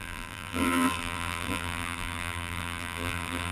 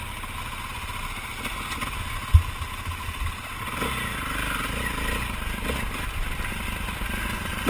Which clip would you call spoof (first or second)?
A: first